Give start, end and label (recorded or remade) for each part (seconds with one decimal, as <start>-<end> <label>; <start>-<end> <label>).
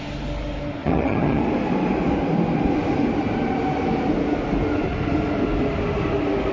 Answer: 0.0-0.8 recorded; 0.8-1.4 remade; 1.4-6.5 recorded